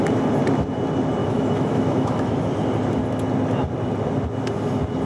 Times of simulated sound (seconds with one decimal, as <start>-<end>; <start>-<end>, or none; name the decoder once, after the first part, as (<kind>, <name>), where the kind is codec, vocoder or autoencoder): 1.2-2.5 (autoencoder, DAC-VAE)